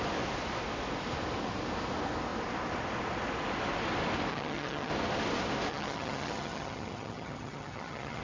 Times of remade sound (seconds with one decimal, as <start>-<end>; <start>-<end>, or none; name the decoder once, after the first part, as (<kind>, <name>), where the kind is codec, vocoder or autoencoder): 4.3-4.9 (vocoder, HiFi-GAN); 5.7-8.2